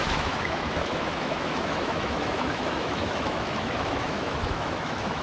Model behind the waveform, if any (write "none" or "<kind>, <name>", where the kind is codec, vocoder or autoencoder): autoencoder, DAC-VAE